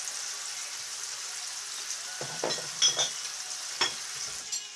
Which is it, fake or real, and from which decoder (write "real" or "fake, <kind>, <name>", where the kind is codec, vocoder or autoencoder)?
real